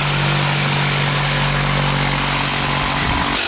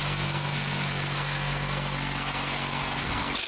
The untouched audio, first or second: first